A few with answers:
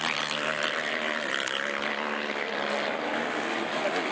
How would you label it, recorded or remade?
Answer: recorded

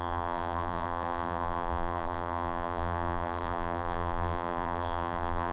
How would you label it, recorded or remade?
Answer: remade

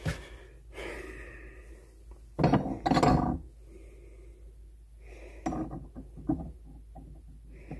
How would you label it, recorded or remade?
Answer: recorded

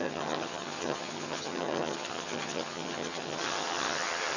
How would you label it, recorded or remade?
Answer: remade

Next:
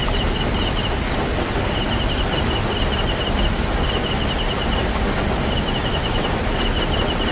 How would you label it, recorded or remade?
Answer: recorded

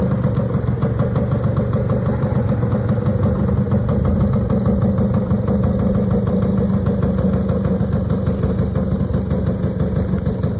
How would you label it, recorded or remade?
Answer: recorded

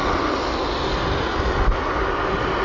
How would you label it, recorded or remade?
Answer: recorded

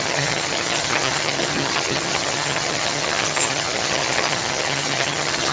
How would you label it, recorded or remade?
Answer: remade